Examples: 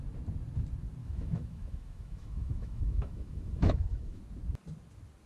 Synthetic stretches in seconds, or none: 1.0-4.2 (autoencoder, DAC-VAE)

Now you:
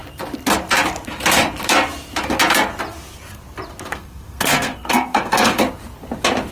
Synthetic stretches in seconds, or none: 3.9-5.6 (codec, SNAC)

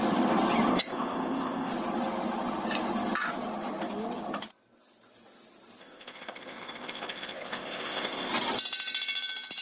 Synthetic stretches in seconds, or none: 0.7-1.7 (codec, ZipCodec); 5.8-8.3

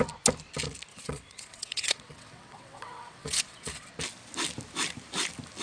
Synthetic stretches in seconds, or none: 0.9-3.9 (vocoder, WaveNeXt)

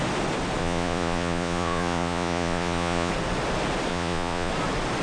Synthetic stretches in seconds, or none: 0.6-3.1 (vocoder, Vocos); 3.9-4.5

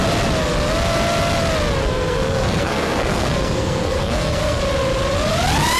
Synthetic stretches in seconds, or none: 1.8-4.6 (codec, SNAC)